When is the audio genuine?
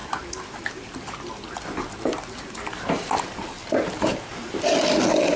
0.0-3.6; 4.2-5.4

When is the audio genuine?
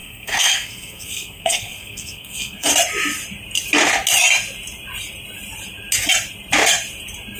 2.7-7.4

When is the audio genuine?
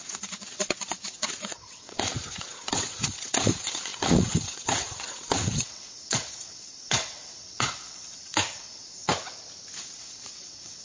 9.1-9.8